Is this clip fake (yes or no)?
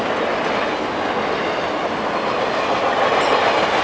no